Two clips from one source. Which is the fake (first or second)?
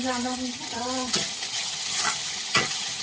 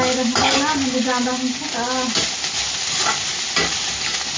first